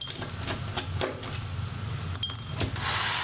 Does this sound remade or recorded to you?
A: recorded